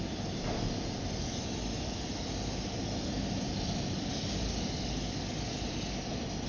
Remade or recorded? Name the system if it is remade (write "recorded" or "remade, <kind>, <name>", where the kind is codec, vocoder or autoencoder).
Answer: recorded